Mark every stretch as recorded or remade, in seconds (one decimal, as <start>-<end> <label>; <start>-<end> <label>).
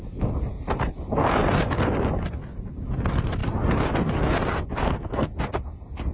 0.0-4.8 recorded; 4.8-5.3 remade; 5.3-6.1 recorded